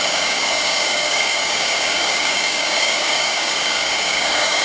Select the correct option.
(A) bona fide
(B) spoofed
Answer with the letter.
B